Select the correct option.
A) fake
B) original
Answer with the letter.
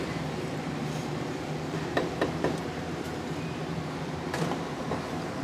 A